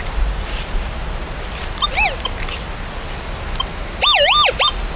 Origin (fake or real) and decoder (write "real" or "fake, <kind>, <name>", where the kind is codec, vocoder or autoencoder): real